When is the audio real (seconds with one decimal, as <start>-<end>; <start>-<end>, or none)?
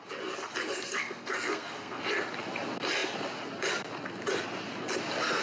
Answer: 0.0-0.7; 2.0-5.4